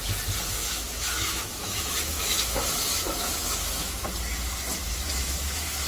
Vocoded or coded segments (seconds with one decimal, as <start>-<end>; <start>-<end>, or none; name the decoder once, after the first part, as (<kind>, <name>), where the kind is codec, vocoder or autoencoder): 0.5-4.0 (autoencoder, DAC-VAE); 4.8-5.9